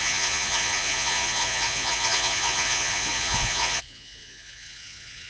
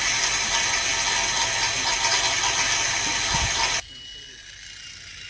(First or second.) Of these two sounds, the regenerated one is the first